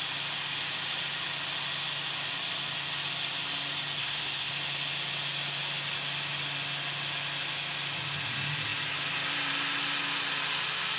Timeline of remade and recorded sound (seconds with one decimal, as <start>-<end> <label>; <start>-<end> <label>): 0.0-4.0 recorded; 4.0-4.5 remade; 4.5-11.0 recorded